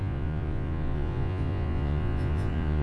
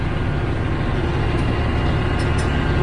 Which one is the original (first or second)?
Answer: second